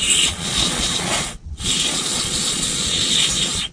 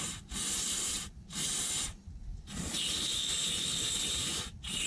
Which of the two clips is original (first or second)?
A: second